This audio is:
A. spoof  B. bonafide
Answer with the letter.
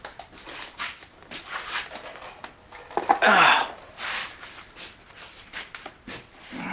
B